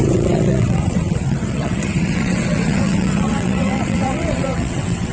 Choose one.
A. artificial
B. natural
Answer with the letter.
A